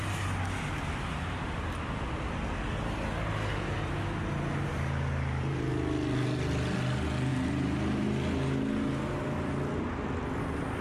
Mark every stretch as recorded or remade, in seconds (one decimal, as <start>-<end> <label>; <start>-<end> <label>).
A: 0.0-10.8 recorded